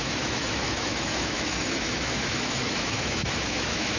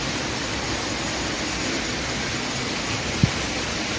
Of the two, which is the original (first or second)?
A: second